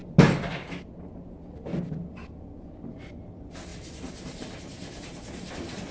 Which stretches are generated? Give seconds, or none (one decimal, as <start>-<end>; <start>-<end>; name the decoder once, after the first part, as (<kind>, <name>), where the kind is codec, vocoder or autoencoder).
none